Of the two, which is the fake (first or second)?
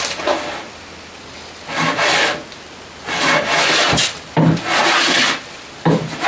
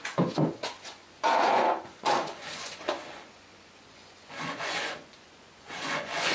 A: second